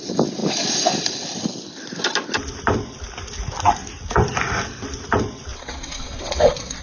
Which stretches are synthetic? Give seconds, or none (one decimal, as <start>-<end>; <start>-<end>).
5.5-6.8

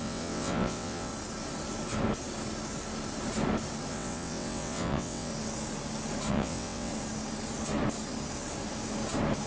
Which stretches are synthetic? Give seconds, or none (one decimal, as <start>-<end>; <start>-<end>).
0.0-1.1; 3.9-5.3; 6.3-6.9

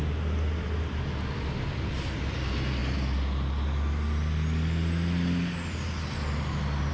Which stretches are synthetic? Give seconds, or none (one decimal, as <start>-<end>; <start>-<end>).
none

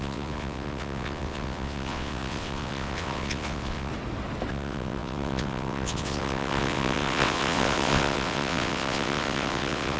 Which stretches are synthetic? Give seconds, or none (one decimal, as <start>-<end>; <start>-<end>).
0.0-3.9; 4.5-10.0

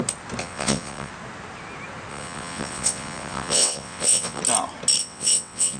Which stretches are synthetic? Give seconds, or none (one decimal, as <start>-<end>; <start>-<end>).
0.4-1.1; 2.1-4.4; 5.0-5.8

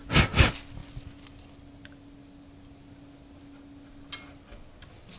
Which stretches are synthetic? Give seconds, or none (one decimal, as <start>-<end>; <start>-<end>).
none